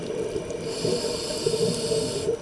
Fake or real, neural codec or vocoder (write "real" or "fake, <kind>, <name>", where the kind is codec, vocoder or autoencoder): real